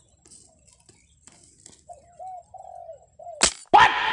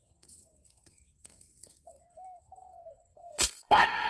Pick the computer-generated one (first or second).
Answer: second